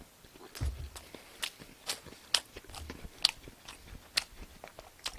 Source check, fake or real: real